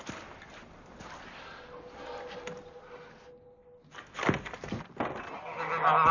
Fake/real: real